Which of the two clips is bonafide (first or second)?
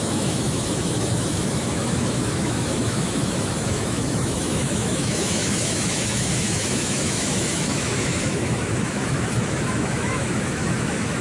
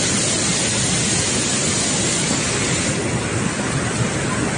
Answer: second